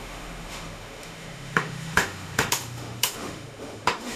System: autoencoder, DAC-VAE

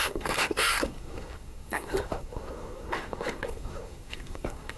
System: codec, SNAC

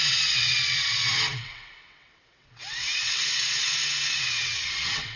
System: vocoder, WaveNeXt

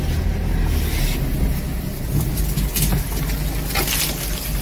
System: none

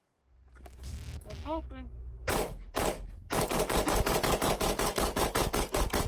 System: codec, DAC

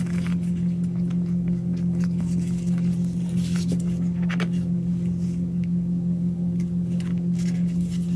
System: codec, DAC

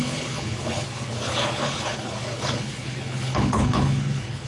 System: codec, HILCodec